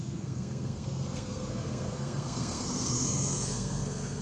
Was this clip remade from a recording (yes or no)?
yes